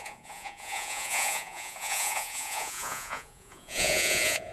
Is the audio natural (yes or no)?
no